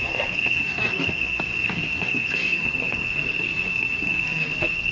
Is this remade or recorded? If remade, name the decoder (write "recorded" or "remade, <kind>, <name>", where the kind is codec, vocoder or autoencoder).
remade, codec, SNAC